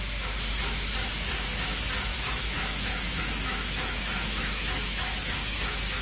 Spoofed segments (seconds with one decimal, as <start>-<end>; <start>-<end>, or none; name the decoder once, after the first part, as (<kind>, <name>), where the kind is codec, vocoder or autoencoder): 2.1-6.0 (autoencoder, DAC-VAE)